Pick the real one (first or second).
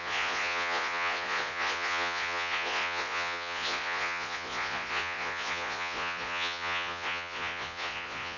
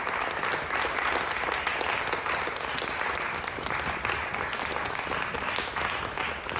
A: second